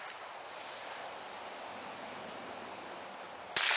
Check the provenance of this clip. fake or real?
real